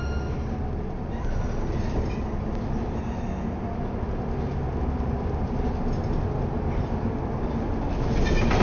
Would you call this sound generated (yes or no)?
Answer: no